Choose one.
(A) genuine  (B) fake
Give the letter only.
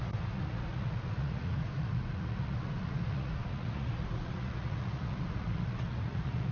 B